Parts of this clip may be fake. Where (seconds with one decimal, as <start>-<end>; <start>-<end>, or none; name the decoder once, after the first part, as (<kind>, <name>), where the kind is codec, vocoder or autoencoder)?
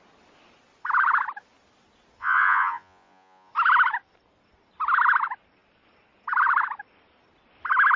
2.2-3.5 (vocoder, Vocos)